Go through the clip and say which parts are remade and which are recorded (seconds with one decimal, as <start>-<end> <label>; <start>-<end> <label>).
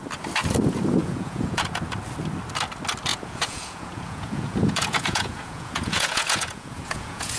0.0-1.0 recorded; 1.0-1.8 remade; 1.8-3.1 recorded; 3.1-7.4 remade